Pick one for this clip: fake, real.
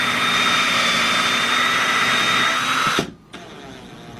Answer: real